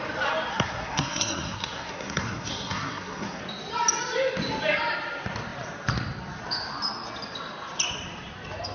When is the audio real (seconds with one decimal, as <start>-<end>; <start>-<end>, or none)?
0.0-0.5; 3.4-8.7